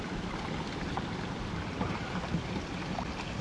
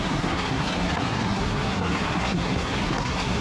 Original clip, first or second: first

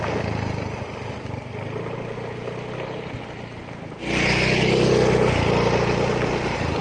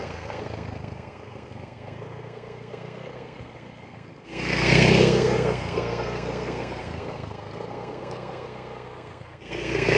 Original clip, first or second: first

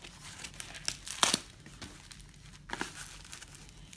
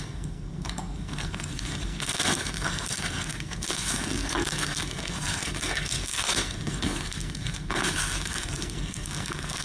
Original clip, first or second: first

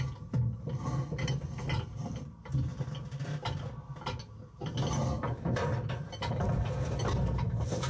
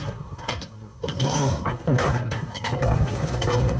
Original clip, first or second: first